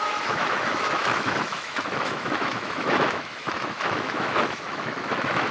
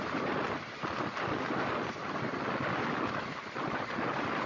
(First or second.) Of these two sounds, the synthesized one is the first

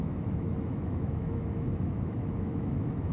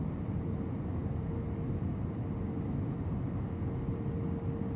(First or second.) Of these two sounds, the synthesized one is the first